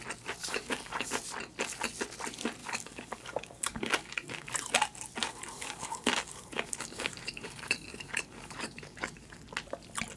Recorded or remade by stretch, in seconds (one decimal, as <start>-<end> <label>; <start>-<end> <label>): 0.0-0.4 recorded; 0.4-1.1 remade; 1.1-2.6 recorded; 2.6-4.5 remade; 4.5-5.2 recorded; 5.2-9.4 remade; 9.4-10.2 recorded